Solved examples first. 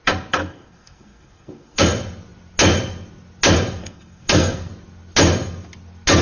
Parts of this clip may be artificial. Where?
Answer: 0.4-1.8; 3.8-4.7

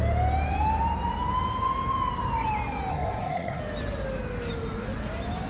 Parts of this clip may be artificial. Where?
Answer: 2.9-3.6

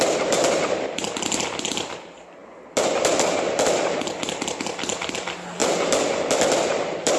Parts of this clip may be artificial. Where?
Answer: none

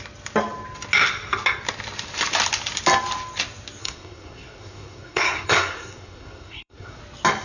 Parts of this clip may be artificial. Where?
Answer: 3.8-7.0

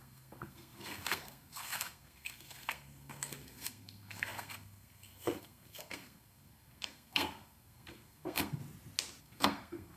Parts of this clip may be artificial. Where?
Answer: 0.0-8.6; 9.2-10.0

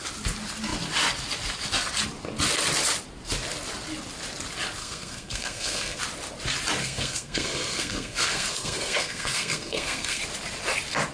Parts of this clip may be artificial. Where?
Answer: 4.8-6.0; 6.8-10.2